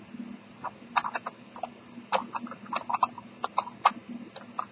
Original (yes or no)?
yes